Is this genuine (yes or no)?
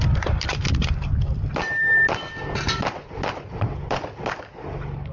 yes